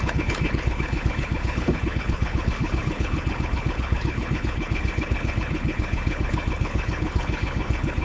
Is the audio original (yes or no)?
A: no